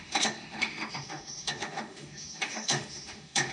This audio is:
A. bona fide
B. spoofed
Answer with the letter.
B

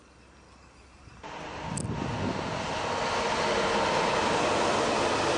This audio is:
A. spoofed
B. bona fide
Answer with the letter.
B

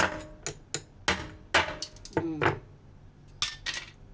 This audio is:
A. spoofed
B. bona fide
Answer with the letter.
B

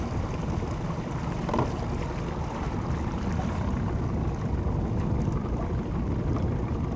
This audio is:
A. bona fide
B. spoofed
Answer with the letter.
A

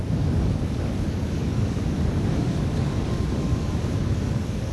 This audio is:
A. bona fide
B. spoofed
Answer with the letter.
B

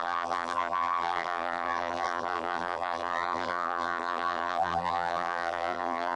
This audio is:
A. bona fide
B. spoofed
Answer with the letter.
B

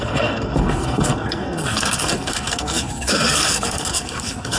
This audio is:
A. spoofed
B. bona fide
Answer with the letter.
A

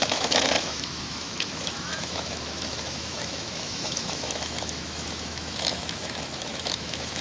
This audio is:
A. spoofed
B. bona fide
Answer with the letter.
A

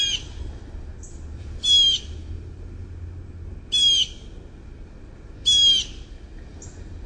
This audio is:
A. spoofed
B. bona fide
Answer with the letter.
B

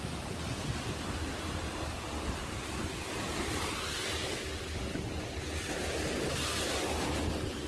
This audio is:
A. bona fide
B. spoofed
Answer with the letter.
A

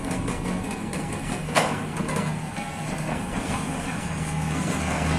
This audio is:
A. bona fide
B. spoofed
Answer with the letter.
B